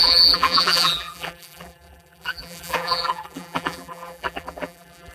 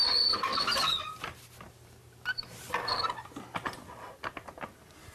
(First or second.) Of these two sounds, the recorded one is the second